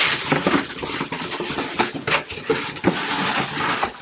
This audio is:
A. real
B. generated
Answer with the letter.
A